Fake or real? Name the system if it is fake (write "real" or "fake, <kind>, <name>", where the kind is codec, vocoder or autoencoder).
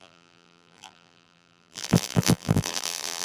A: fake, vocoder, BigVGAN v2